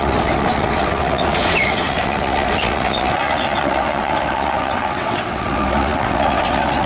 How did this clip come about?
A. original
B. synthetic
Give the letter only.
B